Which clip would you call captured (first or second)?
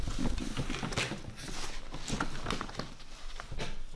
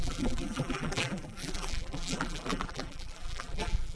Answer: first